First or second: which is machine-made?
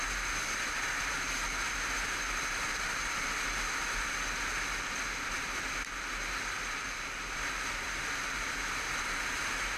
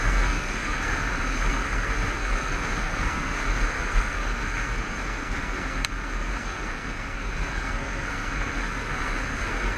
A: second